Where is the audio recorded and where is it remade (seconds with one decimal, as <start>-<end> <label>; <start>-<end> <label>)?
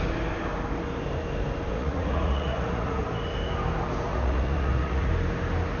0.0-1.7 recorded; 1.7-3.0 remade; 3.0-4.1 recorded; 4.1-5.1 remade; 5.1-5.8 recorded